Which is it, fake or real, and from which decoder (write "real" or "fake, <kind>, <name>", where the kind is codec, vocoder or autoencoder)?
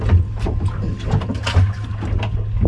real